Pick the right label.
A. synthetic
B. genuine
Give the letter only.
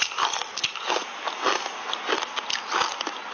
B